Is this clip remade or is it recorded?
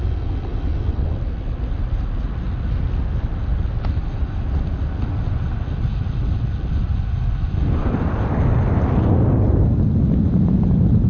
recorded